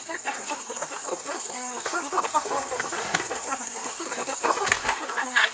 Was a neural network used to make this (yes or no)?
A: yes